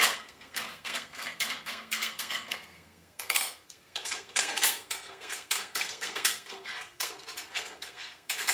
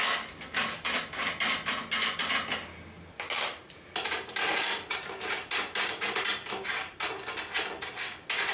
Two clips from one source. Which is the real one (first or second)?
second